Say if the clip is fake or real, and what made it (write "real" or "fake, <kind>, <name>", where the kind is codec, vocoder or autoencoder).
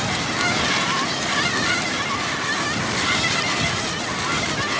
real